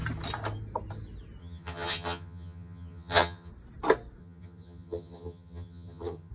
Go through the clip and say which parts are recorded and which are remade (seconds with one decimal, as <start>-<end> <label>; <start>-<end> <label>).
0.0-1.4 recorded; 1.4-3.5 remade; 3.5-4.2 recorded; 4.2-6.3 remade